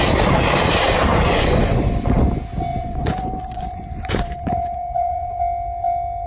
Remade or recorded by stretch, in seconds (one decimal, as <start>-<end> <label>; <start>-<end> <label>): 0.0-1.1 recorded; 1.1-1.8 remade; 1.8-2.7 recorded; 2.7-5.4 remade; 5.4-6.3 recorded

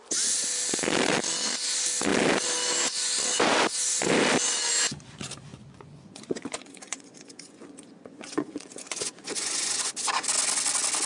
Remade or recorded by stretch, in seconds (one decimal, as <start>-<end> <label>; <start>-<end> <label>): 0.0-5.5 recorded; 5.5-9.9 remade; 9.9-11.1 recorded

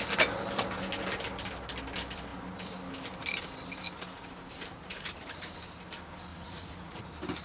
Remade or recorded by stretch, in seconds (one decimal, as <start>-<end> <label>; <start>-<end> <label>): 0.0-4.8 recorded; 4.8-5.5 remade; 5.5-6.3 recorded; 6.3-7.0 remade; 7.0-7.4 recorded

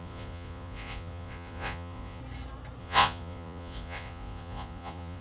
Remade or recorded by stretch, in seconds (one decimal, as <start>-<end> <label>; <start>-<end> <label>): 0.0-2.2 remade; 2.2-2.8 recorded; 2.8-5.2 remade

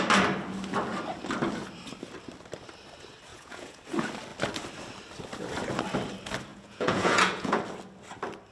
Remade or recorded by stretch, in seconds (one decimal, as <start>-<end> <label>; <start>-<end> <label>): 0.0-3.3 recorded; 3.3-3.8 remade; 3.8-6.5 recorded; 6.5-7.6 remade; 7.6-8.5 recorded